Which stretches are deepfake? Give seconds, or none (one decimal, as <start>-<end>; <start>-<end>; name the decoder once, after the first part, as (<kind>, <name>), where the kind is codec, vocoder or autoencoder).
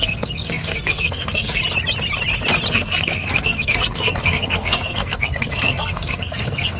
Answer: 0.0-1.6 (codec, SNAC); 2.7-6.8